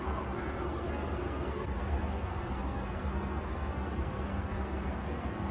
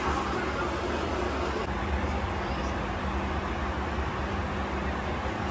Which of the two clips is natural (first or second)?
second